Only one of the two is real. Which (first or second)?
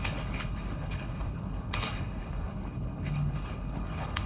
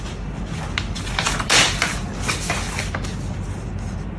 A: second